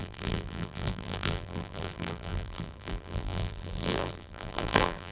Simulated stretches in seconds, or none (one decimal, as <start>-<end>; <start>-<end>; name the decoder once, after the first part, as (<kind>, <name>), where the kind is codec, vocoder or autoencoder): 0.0-5.1 (vocoder, BigVGAN v2)